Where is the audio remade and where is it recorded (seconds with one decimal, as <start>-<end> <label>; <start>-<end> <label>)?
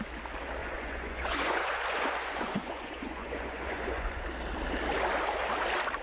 0.0-0.6 recorded; 0.6-4.2 remade; 4.2-6.0 recorded